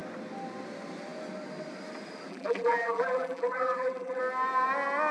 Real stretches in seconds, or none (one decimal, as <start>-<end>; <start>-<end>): 0.0-2.3; 4.2-5.1